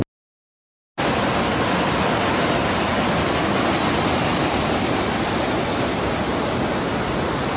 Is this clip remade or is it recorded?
recorded